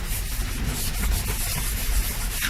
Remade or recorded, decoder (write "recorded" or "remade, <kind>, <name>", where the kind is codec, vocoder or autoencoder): recorded